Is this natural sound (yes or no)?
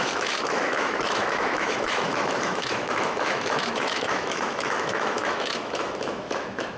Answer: no